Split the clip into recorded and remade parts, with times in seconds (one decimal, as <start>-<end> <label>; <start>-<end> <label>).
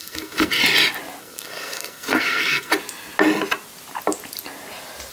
0.0-0.6 remade; 0.6-1.2 recorded; 1.2-2.7 remade; 2.7-5.1 recorded